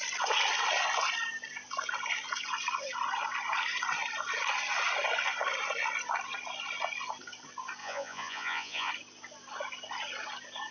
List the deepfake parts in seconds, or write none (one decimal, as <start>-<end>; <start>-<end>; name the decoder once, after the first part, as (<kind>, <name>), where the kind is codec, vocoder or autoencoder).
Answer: 7.8-8.9 (vocoder, Vocos)